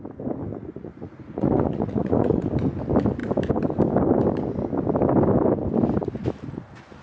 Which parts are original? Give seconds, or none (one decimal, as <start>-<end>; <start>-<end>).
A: 0.0-0.5; 2.5-7.0